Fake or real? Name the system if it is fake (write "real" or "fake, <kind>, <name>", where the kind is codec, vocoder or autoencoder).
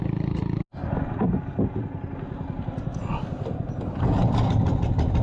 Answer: real